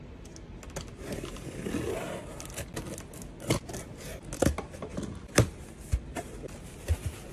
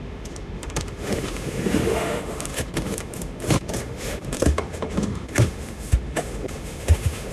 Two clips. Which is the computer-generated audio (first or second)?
second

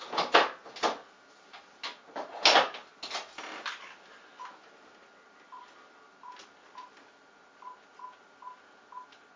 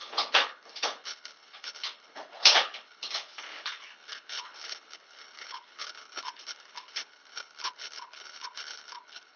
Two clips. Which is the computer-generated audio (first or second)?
second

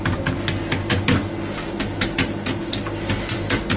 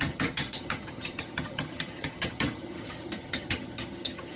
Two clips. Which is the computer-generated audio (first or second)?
second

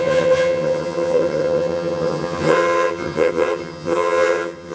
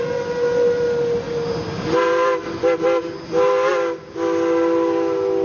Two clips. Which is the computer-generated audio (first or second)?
first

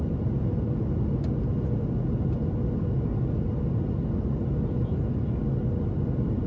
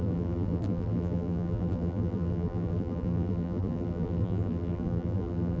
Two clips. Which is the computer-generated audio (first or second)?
second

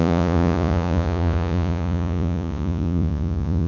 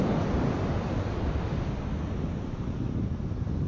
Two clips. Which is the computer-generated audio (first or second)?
first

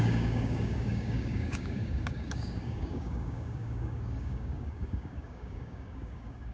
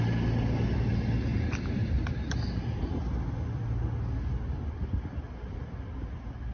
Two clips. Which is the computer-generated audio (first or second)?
first